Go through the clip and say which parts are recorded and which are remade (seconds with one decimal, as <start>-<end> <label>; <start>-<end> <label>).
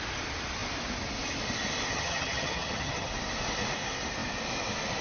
0.0-1.9 recorded; 1.9-3.1 remade; 3.1-5.0 recorded